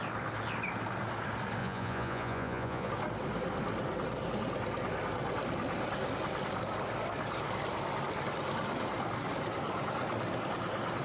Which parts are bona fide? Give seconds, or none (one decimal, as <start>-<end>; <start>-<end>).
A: 0.0-1.6; 2.9-11.0